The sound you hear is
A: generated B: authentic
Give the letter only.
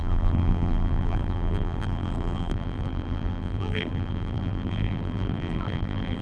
A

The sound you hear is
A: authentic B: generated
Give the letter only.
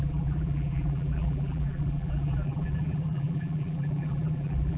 B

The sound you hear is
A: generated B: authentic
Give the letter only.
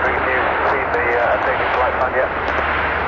B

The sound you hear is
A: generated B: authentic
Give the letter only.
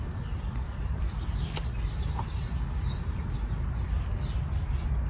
B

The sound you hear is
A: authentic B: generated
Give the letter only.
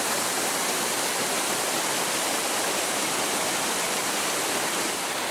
B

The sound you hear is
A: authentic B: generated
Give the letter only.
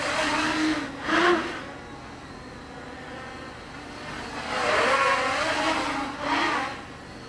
A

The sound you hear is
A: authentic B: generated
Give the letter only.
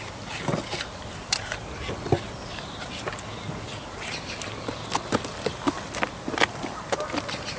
A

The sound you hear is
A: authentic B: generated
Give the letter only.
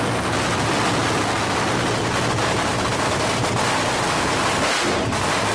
B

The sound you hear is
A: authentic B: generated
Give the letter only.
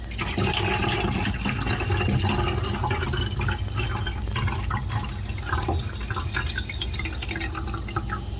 A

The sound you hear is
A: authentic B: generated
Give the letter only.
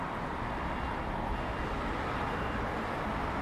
A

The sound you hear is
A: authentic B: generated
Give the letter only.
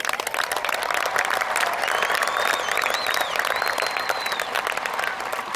B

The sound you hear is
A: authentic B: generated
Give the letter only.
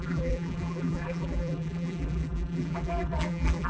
B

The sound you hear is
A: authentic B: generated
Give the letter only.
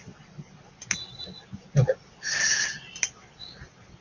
A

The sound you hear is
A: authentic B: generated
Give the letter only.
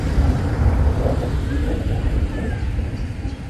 A